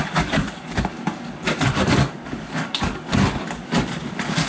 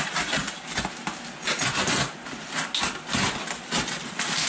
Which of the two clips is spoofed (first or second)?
first